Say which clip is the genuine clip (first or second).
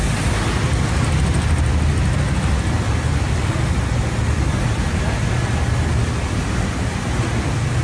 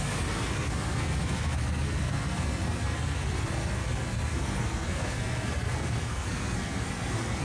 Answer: first